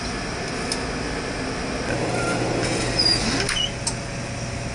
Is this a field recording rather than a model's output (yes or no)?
yes